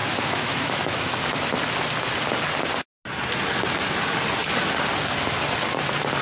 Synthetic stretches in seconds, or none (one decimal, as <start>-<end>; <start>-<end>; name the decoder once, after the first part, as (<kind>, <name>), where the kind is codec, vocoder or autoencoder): 0.0-1.1 (autoencoder, DAC-VAE)